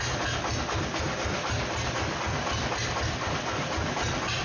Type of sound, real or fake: real